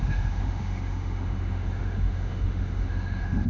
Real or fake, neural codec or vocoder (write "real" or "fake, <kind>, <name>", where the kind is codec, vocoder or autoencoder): fake, autoencoder, DAC-VAE